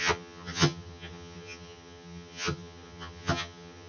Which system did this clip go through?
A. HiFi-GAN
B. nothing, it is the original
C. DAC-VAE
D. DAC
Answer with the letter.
A